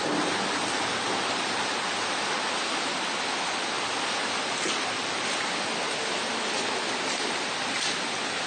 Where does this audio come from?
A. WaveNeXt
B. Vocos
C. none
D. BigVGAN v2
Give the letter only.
C